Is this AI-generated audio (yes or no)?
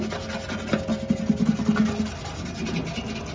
no